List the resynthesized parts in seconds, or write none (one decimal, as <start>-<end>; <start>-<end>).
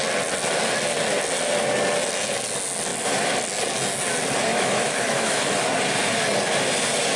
4.5-5.6